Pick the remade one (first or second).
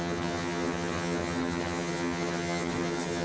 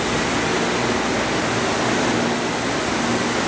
first